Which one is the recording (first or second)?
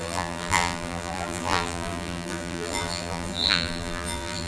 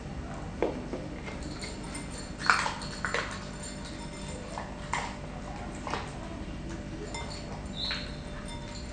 second